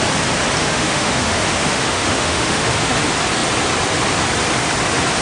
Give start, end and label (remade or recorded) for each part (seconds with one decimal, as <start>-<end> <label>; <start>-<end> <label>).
0.0-0.6 recorded; 0.6-2.9 remade; 2.9-5.2 recorded